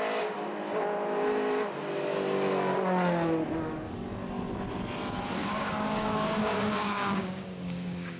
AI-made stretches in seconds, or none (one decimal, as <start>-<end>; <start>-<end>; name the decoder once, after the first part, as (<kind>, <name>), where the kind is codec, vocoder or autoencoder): 5.4-8.2 (codec, DAC)